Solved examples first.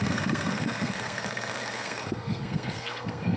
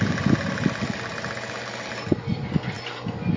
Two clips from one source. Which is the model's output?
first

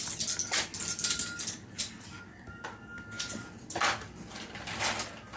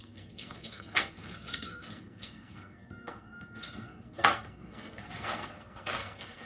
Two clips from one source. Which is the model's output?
second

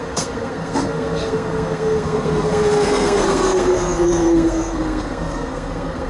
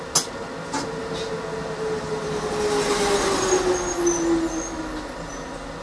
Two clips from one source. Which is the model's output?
first